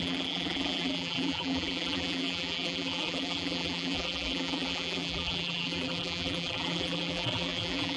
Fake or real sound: fake